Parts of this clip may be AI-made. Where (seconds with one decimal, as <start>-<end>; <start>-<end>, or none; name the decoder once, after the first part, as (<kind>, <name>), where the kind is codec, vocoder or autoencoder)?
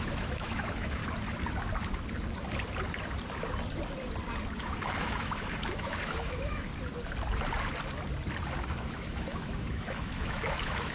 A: 0.0-1.0 (autoencoder, DAC-VAE); 4.6-6.7; 8.7-10.9